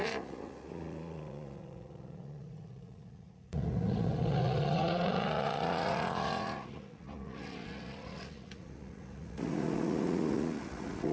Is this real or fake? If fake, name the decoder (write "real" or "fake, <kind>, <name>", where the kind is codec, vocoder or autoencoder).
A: fake, vocoder, Vocos